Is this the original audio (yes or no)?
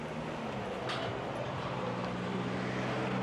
yes